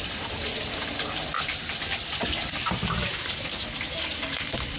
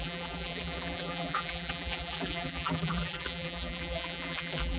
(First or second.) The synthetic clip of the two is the second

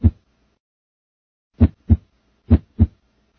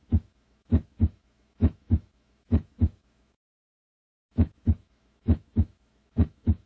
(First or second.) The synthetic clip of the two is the second